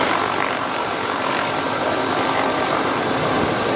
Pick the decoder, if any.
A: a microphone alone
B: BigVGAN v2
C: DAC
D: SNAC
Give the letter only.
B